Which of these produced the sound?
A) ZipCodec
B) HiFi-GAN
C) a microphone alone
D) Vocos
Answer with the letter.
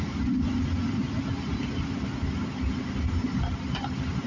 C